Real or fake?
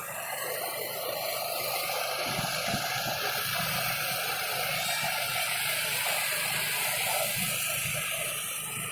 real